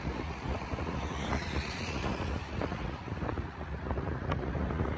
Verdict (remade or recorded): remade